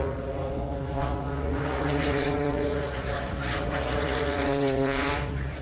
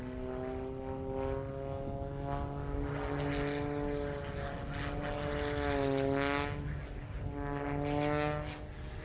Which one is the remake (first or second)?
first